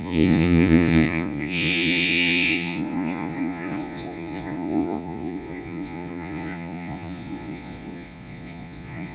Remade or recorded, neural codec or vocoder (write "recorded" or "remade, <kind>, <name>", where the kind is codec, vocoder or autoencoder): remade, vocoder, Vocos